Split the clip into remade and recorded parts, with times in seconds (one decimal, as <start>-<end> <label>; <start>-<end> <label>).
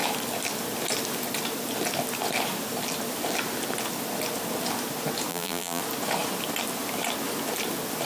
0.0-5.3 recorded; 5.3-5.8 remade; 5.8-8.1 recorded